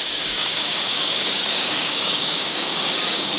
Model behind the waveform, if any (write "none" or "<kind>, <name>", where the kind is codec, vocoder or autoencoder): codec, DAC